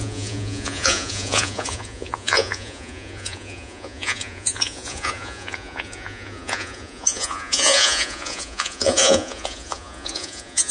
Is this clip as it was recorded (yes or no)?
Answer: no